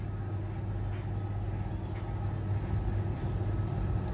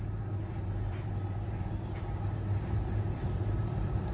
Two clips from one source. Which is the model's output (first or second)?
second